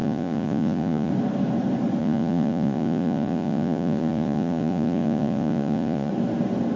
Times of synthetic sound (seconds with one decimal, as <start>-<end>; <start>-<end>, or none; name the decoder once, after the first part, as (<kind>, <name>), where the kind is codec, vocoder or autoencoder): 0.0-1.1 (vocoder, Vocos); 2.0-6.1